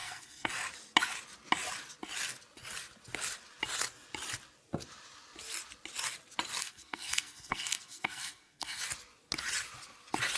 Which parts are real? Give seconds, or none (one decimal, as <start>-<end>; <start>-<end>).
0.5-6.6; 8.8-10.4